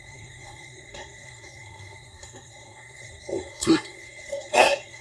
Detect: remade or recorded remade